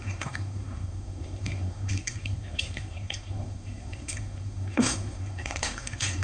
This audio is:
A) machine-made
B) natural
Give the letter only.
A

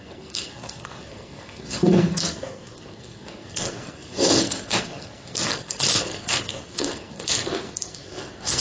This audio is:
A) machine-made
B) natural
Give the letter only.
A